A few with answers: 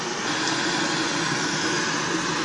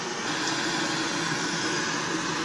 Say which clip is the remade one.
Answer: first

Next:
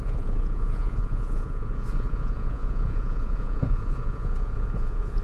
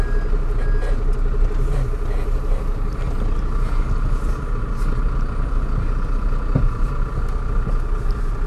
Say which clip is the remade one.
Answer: first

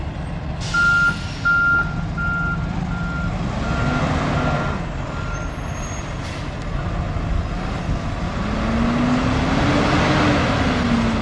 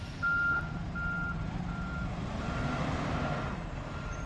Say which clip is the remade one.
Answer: second